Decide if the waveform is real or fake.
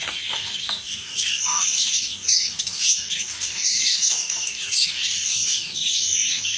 fake